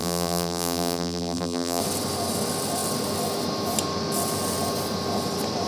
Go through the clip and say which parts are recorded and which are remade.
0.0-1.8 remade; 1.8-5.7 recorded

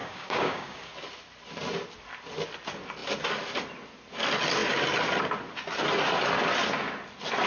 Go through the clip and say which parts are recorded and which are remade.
0.0-0.9 remade; 0.9-7.5 recorded

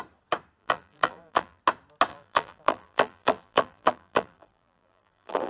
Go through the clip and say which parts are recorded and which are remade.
0.0-0.6 recorded; 0.6-1.6 remade; 1.6-2.1 recorded; 2.1-5.5 remade

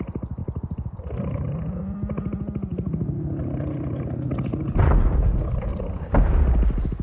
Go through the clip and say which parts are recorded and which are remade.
0.0-0.4 recorded; 0.4-1.0 remade; 1.0-7.0 recorded

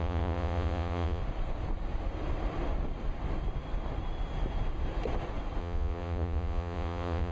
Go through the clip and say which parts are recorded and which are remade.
0.0-1.2 remade; 1.2-5.6 recorded; 5.6-7.3 remade